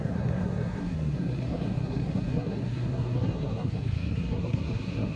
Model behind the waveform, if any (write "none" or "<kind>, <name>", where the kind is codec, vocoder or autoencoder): codec, SNAC